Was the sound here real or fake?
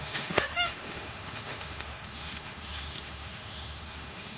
fake